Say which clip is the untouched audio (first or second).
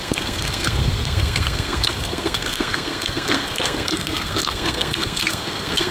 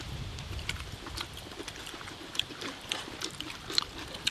second